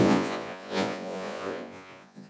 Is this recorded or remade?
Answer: remade